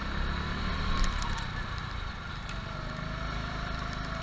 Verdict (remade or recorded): recorded